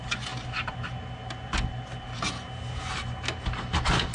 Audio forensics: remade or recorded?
recorded